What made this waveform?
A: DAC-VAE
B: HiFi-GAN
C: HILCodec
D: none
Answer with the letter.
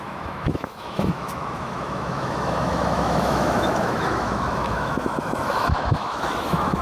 A